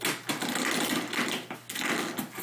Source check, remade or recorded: recorded